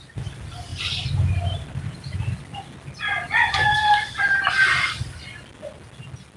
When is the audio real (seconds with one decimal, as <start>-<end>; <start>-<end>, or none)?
0.0-6.4